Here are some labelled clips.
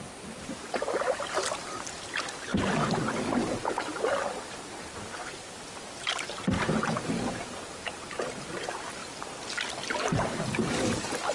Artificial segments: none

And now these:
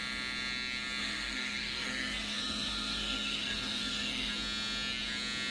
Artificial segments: 1.0-4.3

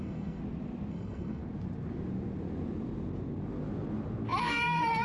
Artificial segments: 0.0-0.4; 0.9-1.4; 4.4-5.0

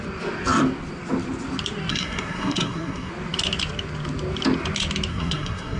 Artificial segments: 1.9-3.1; 5.1-5.8

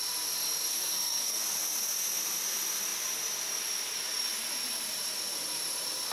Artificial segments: 0.7-1.4

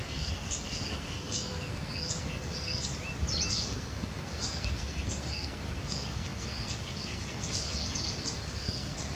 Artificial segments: 0.0-2.9; 3.5-9.2